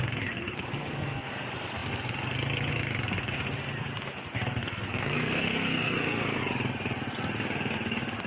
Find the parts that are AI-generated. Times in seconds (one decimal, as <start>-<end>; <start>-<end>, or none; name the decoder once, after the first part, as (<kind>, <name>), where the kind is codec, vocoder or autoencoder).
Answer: 0.7-1.3 (codec, SNAC); 4.6-6.4

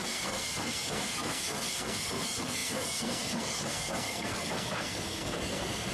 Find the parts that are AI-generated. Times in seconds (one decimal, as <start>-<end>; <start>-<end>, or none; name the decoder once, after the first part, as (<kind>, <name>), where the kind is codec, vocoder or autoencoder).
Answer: 0.0-5.9 (codec, SNAC)

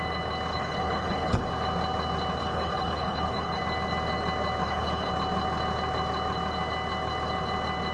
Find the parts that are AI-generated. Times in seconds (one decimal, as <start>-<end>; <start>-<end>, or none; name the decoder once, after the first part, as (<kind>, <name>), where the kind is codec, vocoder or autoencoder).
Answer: 0.5-1.5 (codec, HILCodec); 2.4-3.6; 4.6-5.1

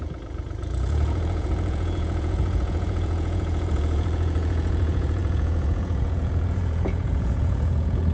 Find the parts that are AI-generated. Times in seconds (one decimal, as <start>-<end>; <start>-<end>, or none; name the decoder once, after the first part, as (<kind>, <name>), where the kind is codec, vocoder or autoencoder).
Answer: 0.0-8.1 (vocoder, Vocos)

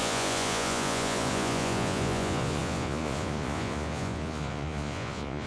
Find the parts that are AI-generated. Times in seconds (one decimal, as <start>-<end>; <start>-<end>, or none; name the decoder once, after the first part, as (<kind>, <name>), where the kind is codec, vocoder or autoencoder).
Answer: 0.0-5.5 (vocoder, Vocos)